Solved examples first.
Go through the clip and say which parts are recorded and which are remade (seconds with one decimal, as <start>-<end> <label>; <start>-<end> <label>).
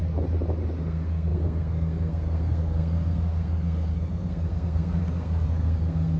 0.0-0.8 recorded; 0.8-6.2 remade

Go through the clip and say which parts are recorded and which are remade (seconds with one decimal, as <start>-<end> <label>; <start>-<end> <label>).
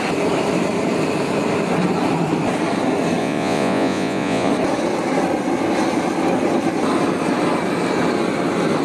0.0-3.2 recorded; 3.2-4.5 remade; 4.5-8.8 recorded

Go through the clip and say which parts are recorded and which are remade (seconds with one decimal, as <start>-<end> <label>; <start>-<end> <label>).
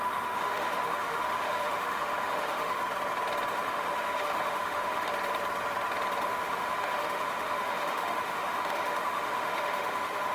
0.0-2.8 remade; 2.8-3.5 recorded; 3.5-5.1 remade; 5.1-6.2 recorded; 6.2-10.3 remade